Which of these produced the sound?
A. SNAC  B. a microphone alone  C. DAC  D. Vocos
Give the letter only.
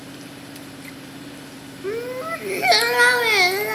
B